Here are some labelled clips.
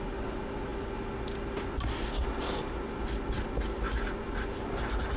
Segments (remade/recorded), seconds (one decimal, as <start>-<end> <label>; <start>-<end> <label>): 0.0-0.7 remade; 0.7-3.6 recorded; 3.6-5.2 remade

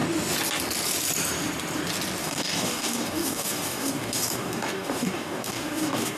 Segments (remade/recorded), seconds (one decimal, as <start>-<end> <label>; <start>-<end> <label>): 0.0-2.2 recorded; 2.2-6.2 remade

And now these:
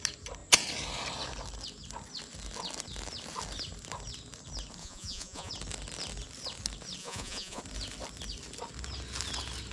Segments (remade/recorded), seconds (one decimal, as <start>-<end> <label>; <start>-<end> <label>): 0.0-4.8 recorded; 4.8-5.5 remade; 5.5-7.0 recorded; 7.0-7.6 remade; 7.6-9.7 recorded